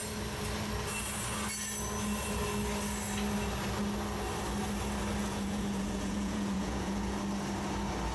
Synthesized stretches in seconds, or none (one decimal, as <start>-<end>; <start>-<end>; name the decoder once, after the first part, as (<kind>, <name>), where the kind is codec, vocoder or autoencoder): 5.2-7.2 (vocoder, Vocos)